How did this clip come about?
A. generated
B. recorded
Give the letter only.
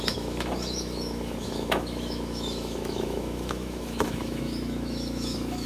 A